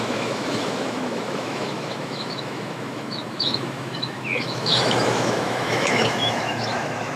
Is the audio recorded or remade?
remade